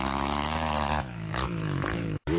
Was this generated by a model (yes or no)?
yes